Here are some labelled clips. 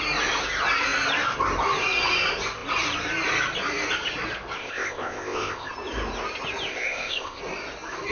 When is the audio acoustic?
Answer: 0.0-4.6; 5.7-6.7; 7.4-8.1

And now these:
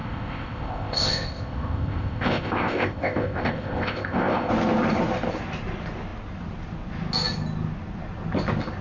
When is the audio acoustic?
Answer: 4.5-8.8

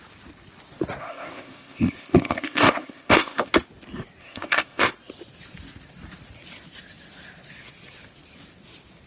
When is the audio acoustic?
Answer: 0.0-1.0; 3.5-4.2; 4.9-9.1

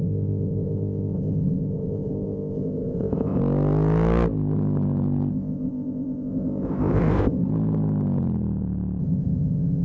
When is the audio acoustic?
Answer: 3.4-5.3; 7.5-9.0